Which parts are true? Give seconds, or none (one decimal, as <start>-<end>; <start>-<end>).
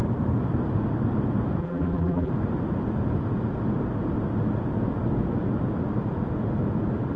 0.0-1.6; 2.3-7.2